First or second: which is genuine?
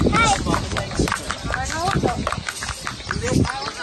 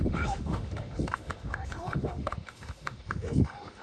first